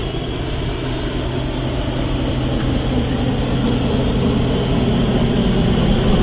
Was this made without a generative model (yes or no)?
yes